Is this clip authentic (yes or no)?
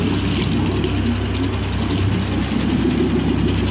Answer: yes